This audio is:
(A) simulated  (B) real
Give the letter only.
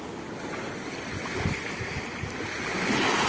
B